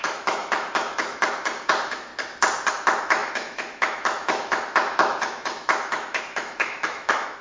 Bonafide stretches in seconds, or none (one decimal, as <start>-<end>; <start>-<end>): 2.1-2.7